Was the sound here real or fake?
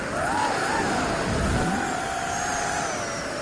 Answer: real